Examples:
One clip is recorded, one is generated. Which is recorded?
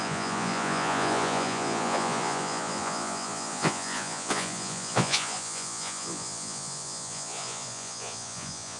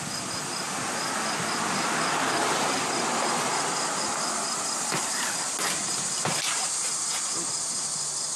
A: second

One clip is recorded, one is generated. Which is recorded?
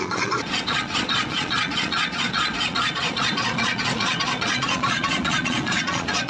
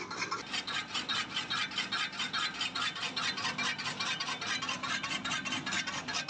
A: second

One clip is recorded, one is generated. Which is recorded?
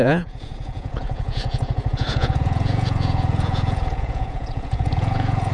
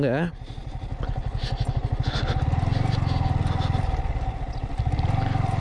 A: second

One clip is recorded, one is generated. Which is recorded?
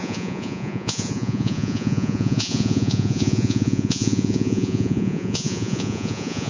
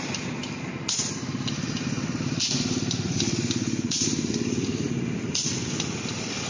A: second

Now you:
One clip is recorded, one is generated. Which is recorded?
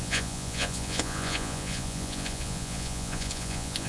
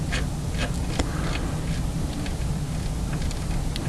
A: second